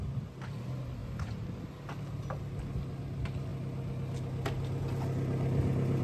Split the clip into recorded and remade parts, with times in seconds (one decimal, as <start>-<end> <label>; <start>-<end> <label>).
0.0-6.0 recorded